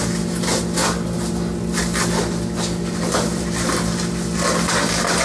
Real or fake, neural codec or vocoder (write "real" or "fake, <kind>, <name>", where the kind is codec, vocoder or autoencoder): real